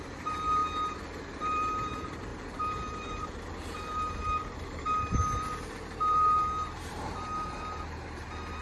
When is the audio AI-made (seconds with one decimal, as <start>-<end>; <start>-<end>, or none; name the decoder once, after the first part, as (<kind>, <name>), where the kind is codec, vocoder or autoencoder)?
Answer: 0.0-0.6 (vocoder, BigVGAN v2); 1.4-8.6